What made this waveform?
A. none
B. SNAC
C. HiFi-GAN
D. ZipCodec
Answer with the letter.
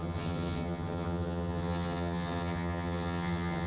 C